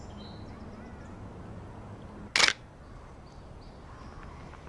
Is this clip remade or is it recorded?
recorded